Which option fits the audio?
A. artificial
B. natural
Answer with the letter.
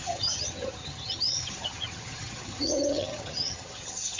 A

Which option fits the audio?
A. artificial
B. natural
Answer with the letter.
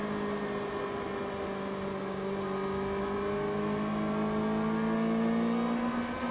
B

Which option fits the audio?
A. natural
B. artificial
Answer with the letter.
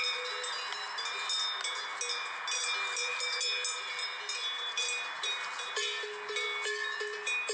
A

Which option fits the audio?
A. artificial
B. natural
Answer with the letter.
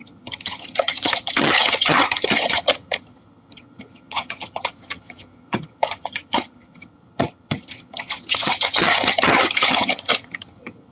A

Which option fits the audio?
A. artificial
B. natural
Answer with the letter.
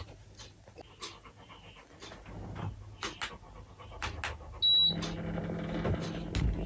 B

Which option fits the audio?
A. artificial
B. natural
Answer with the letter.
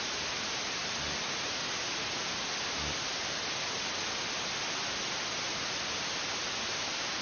B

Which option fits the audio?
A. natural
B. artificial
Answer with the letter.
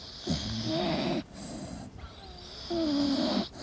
A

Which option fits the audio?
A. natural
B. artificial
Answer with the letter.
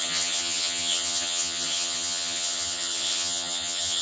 B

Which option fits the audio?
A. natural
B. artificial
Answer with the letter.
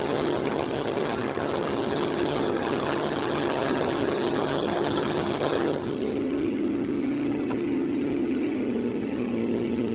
B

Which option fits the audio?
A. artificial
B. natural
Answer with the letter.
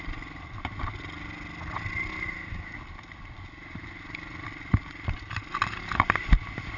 B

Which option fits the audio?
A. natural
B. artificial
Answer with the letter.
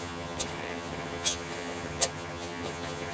B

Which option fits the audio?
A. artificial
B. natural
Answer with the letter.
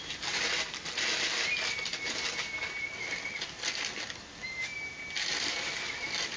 B